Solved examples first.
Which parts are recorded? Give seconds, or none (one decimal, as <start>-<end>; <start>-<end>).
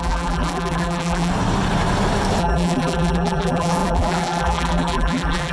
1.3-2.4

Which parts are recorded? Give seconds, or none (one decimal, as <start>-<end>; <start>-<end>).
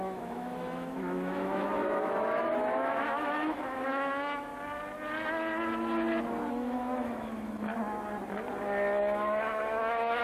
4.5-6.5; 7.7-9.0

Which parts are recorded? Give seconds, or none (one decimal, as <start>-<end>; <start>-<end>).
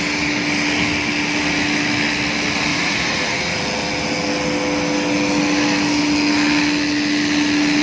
0.0-2.7; 3.6-7.8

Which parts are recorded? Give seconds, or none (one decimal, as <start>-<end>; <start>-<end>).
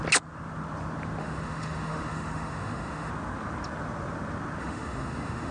0.0-1.2; 3.1-4.6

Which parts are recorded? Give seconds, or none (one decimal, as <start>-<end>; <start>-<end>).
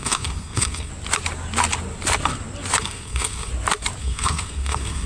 0.9-2.8; 3.5-4.0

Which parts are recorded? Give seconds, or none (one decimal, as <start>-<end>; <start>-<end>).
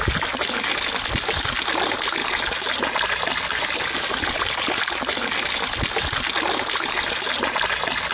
0.0-8.1